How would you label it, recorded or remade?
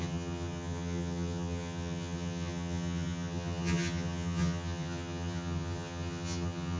remade